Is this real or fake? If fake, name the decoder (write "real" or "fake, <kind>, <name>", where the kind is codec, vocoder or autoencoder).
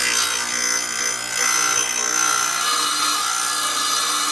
real